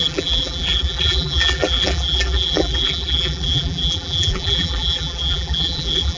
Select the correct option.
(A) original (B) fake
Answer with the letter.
B